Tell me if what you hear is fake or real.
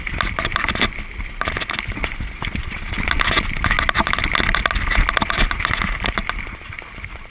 real